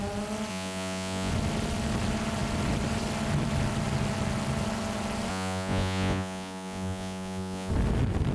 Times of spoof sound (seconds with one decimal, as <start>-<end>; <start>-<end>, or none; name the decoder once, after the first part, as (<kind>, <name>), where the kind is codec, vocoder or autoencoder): 0.5-1.3 (vocoder, Vocos); 5.3-7.7